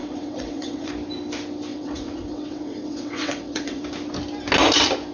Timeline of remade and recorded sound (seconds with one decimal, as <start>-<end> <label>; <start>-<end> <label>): 0.0-0.9 remade; 0.9-1.7 recorded; 1.7-3.8 remade; 3.8-5.1 recorded